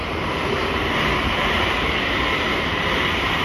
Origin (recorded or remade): remade